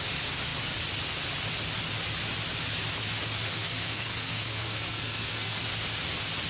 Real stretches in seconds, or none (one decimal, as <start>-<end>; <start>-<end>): 0.0-3.5; 5.6-6.5